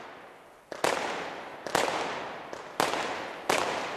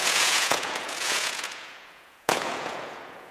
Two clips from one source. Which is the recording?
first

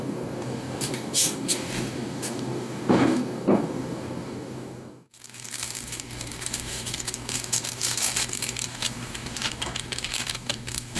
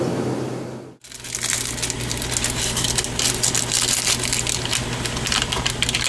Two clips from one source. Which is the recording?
second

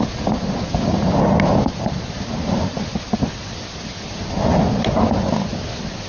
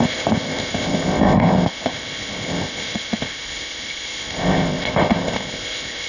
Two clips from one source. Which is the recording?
first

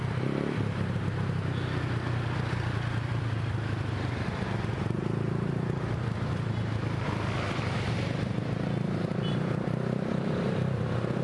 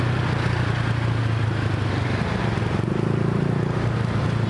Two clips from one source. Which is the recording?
second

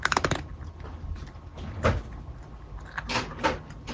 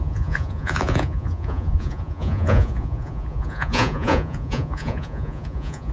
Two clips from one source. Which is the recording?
first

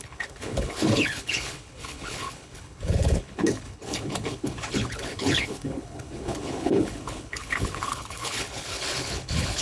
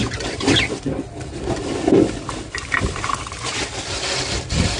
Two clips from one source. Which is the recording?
second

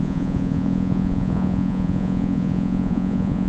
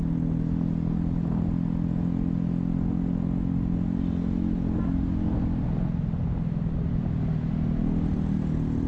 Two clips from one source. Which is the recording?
second